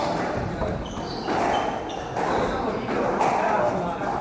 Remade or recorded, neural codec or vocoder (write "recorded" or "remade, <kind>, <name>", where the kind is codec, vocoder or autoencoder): recorded